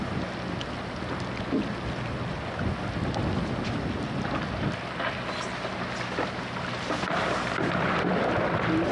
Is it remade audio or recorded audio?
recorded